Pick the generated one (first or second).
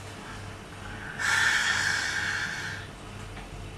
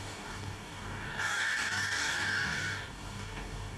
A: second